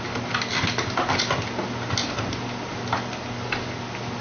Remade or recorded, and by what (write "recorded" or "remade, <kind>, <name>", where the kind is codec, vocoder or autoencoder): recorded